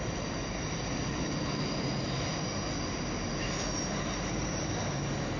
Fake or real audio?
real